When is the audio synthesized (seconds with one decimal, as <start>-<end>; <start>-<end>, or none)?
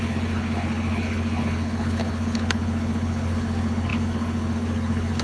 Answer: 0.0-5.2